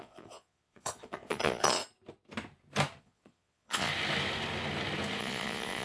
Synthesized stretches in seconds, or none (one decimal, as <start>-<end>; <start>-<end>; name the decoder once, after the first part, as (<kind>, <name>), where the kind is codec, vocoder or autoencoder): 0.0-1.8 (vocoder, Vocos); 3.0-3.9; 5.2-5.8